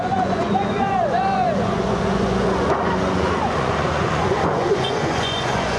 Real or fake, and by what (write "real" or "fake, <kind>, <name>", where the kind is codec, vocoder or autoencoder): fake, vocoder, Vocos